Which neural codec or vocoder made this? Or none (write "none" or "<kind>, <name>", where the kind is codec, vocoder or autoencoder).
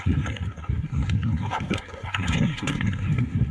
codec, SNAC